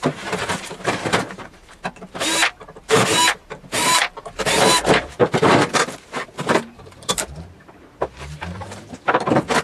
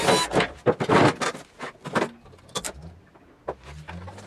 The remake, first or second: first